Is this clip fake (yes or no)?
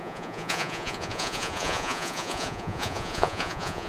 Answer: yes